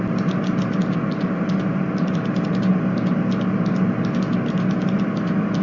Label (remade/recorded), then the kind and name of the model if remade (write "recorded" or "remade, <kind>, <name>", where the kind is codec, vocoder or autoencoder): recorded